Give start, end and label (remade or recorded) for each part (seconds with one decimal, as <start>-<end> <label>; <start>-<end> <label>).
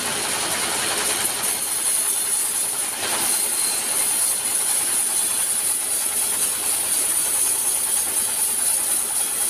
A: 0.0-9.5 recorded